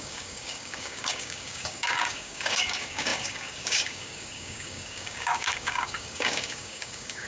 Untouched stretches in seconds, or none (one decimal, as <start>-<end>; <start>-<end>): none